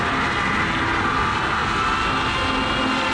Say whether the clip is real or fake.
real